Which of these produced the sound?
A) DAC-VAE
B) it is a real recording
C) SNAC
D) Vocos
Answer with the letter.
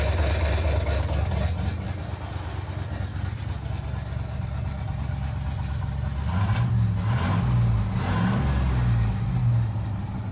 B